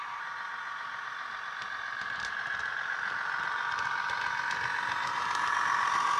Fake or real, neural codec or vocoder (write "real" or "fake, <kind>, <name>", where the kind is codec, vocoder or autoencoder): real